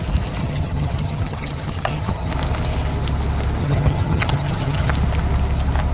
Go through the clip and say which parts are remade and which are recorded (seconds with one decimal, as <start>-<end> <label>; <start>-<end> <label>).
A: 0.0-0.4 recorded; 0.4-2.3 remade; 2.3-3.6 recorded; 3.6-4.9 remade; 4.9-5.9 recorded